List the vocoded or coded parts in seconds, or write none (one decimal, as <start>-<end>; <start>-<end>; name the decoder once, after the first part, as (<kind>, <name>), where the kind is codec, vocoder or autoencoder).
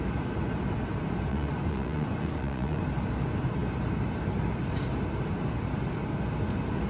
1.3-2.8 (vocoder, Vocos)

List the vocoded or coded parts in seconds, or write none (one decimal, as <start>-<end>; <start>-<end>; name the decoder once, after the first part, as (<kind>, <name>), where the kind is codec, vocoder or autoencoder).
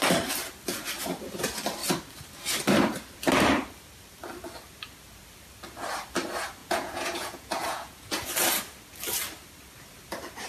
6.6-8.3 (vocoder, Vocos)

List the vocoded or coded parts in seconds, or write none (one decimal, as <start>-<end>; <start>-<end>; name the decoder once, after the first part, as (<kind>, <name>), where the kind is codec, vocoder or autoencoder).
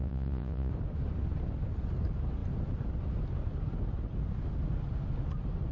0.0-0.7 (vocoder, Vocos)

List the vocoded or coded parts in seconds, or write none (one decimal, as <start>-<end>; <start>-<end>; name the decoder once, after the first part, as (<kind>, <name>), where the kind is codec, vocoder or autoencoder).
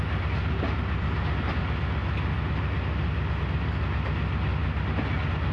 none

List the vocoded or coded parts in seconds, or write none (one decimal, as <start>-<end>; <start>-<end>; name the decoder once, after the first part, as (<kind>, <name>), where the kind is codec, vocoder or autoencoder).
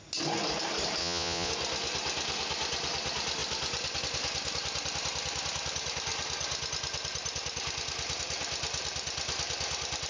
1.0-1.5 (vocoder, Vocos)